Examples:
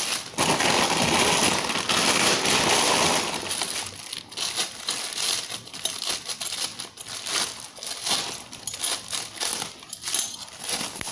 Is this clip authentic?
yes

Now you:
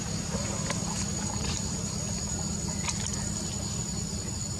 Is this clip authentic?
yes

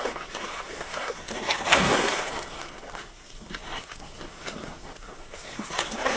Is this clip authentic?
no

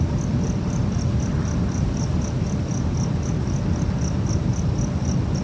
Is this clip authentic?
yes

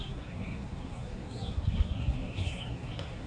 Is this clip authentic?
no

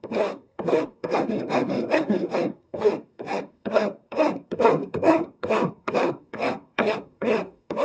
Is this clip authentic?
no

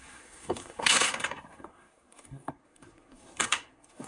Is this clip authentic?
no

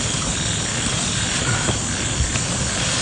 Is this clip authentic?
yes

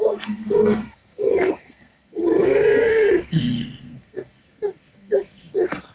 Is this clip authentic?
no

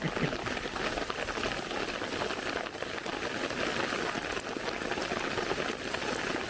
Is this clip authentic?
yes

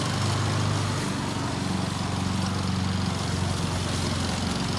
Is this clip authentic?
yes